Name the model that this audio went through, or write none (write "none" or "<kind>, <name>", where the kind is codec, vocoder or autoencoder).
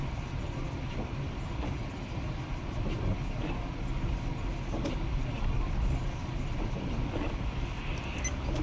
none